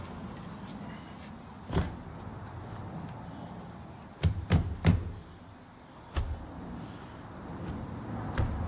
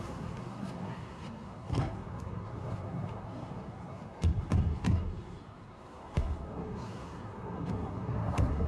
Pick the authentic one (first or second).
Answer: first